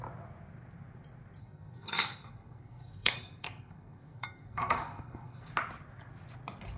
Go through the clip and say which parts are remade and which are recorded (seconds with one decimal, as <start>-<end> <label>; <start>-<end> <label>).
0.0-1.4 recorded; 1.4-5.5 remade; 5.5-6.8 recorded

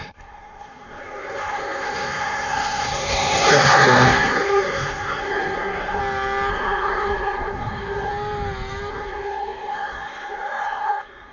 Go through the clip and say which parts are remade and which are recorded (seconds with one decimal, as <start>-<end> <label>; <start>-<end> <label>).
0.0-6.0 remade; 6.0-6.5 recorded; 6.5-8.1 remade; 8.1-8.9 recorded; 8.9-11.3 remade

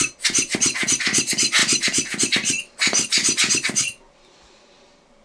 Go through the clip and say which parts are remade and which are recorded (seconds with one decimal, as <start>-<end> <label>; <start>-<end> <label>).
0.0-5.2 recorded

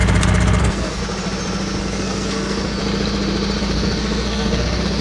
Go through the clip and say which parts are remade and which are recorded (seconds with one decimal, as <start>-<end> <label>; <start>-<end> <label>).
0.0-0.6 recorded; 0.6-1.0 remade; 1.0-1.8 recorded; 1.8-2.8 remade; 2.8-3.6 recorded; 3.6-5.0 remade

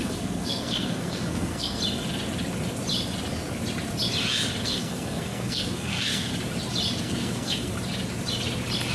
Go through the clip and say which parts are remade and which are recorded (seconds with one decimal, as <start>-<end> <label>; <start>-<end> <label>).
0.0-1.8 remade; 1.8-4.6 recorded; 4.6-6.3 remade; 6.3-7.0 recorded; 7.0-7.7 remade; 7.7-8.9 recorded